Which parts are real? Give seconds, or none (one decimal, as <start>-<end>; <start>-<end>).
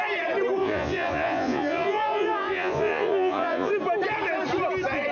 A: 0.0-0.6; 3.7-5.1